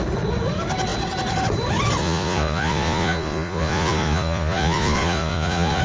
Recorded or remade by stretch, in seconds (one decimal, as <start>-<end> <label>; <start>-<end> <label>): 0.0-2.0 recorded; 2.0-5.8 remade